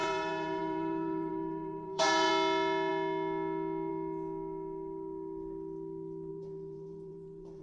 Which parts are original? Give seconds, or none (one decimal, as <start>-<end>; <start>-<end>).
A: 2.3-6.3